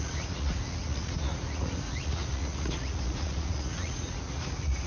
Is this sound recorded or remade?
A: remade